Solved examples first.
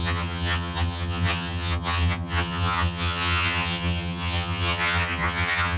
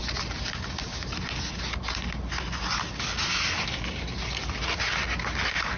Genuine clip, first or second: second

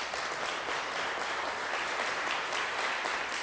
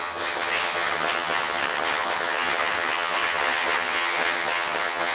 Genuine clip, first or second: first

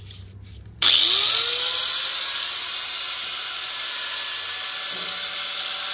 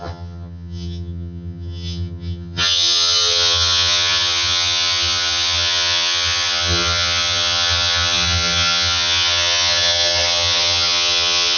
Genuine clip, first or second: first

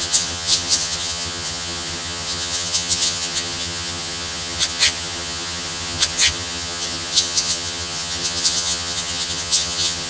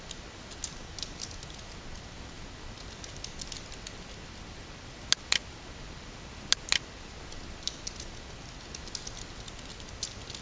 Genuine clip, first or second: second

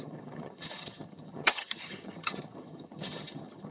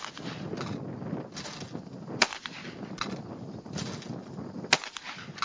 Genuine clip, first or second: second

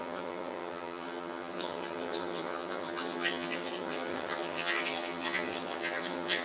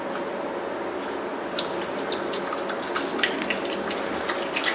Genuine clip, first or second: second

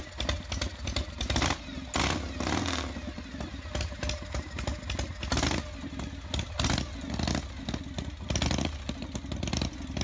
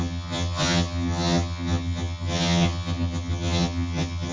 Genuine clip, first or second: first